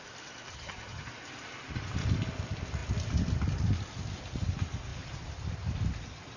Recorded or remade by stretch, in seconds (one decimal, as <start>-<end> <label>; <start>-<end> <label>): 0.0-0.5 recorded; 0.5-1.1 remade; 1.1-6.4 recorded